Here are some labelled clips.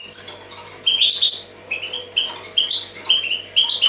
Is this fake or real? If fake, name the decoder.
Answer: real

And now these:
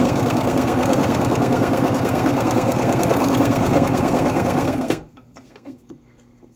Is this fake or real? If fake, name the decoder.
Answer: fake, codec, SNAC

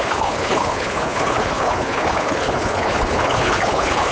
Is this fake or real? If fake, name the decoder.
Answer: fake, codec, HILCodec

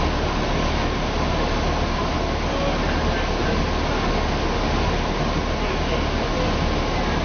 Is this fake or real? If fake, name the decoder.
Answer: real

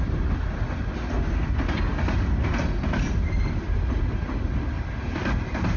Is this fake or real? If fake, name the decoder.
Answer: real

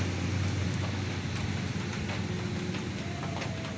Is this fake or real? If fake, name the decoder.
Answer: real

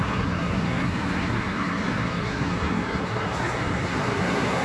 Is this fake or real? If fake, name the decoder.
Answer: fake, codec, SNAC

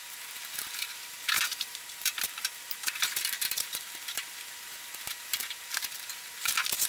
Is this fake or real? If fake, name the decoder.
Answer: fake, vocoder, BigVGAN v2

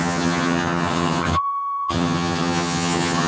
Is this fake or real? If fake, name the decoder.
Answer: fake, vocoder, HiFi-GAN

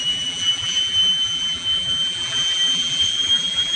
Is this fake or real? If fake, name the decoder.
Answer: fake, vocoder, BigVGAN v2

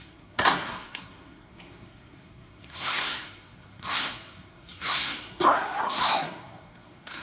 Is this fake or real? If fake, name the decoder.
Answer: fake, codec, SNAC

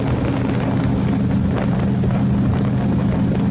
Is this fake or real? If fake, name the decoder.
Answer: real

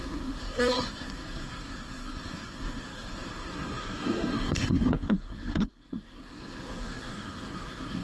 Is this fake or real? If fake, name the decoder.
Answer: fake, codec, SNAC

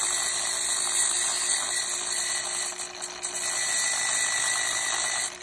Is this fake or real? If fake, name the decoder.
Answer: real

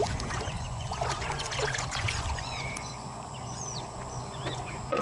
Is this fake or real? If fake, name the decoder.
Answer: fake, vocoder, Vocos